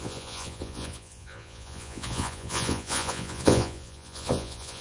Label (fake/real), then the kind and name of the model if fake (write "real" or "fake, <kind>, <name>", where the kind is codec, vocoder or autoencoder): fake, vocoder, Vocos